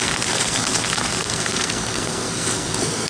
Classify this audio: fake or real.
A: fake